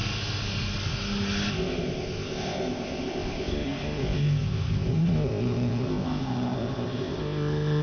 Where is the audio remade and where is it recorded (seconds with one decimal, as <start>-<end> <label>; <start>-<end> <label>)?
0.0-1.5 recorded; 1.5-7.8 remade